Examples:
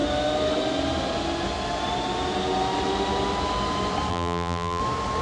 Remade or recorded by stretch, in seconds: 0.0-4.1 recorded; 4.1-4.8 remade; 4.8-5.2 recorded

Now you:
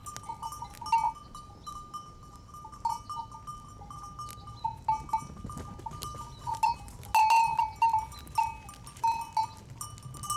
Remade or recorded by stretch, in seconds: 0.0-10.4 recorded

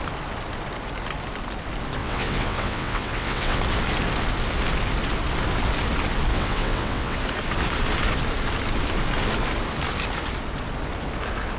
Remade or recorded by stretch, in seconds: 0.0-2.0 recorded; 2.0-3.6 remade; 3.6-6.3 recorded; 6.3-7.2 remade; 7.2-11.6 recorded

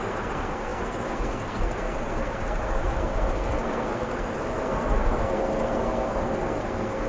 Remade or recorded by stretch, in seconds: 0.0-7.1 remade

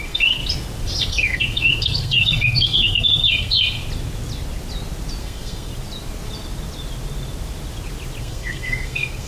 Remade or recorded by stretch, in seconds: 0.0-0.4 remade; 0.4-1.1 recorded; 1.1-3.8 remade; 3.8-5.2 recorded; 5.2-5.7 remade; 5.7-8.2 recorded; 8.2-9.3 remade

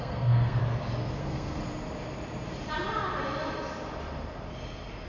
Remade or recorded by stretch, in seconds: 0.0-0.6 remade; 0.6-1.2 recorded; 1.2-1.6 remade; 1.6-5.1 recorded